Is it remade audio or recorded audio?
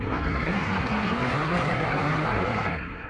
remade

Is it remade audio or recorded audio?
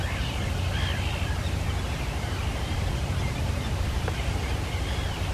recorded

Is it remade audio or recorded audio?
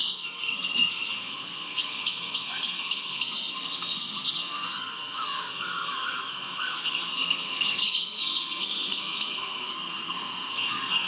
remade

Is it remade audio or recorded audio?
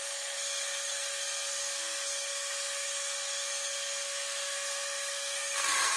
remade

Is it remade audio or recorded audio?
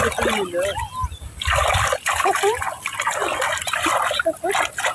recorded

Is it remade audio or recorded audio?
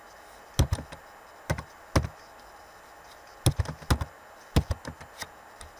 recorded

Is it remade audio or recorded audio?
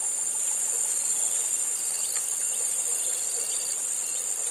recorded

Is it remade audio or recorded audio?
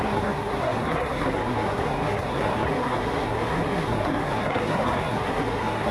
remade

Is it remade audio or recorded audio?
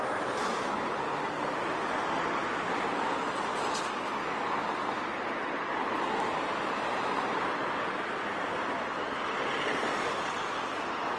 recorded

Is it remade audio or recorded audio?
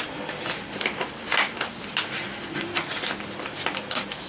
recorded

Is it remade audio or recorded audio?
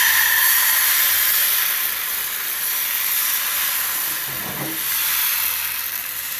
recorded